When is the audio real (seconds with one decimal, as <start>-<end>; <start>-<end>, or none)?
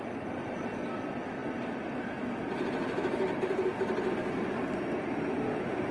0.0-5.9